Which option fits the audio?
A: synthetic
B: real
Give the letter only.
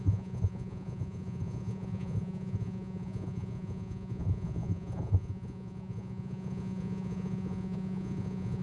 A